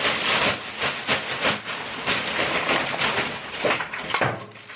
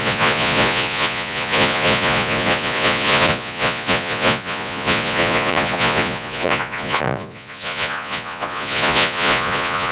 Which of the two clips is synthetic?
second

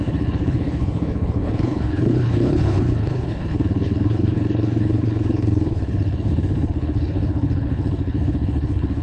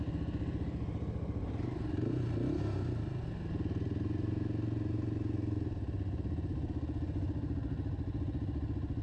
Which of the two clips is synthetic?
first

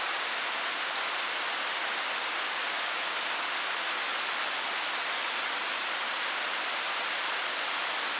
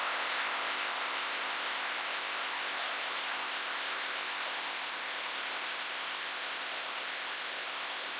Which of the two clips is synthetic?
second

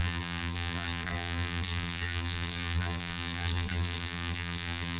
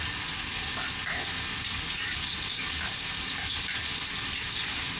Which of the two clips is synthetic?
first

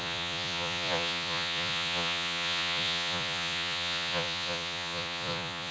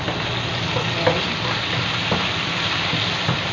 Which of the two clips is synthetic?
first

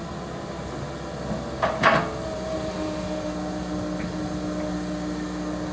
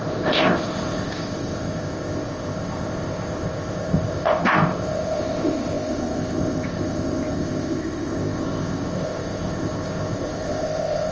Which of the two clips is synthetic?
second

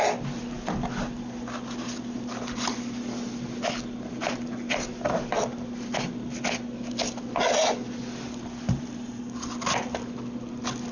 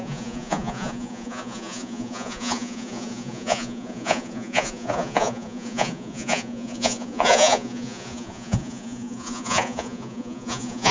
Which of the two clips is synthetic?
second